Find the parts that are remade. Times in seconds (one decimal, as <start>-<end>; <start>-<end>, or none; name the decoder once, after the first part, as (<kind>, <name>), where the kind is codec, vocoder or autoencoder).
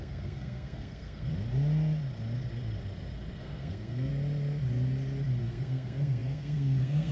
0.0-1.3 (codec, SNAC); 3.4-4.1; 5.4-7.1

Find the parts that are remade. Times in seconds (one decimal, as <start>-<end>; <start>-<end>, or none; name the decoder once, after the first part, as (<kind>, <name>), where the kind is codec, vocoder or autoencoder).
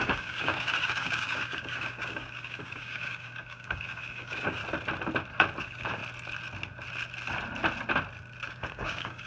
0.0-4.6 (codec, DAC); 5.6-6.0; 8.5-9.3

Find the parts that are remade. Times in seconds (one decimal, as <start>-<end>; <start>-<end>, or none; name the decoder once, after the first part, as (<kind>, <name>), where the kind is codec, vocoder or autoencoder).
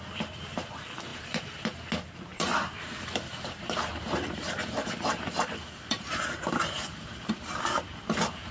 1.1-1.9 (vocoder, BigVGAN v2); 2.3-7.3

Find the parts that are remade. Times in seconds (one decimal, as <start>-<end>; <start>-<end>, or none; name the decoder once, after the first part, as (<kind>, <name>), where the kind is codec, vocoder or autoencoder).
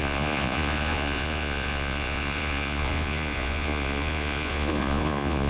0.0-5.5 (vocoder, Vocos)